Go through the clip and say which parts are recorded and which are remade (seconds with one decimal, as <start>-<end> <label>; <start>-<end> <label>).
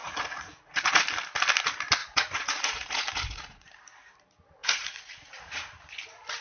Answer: 0.0-1.0 remade; 1.0-2.0 recorded; 2.0-3.7 remade; 3.7-4.6 recorded; 4.6-6.0 remade; 6.0-6.4 recorded